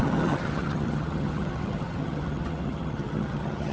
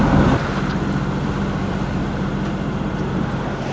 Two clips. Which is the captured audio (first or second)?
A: second